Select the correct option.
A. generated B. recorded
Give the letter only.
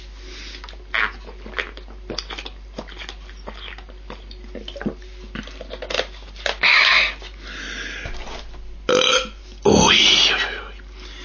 B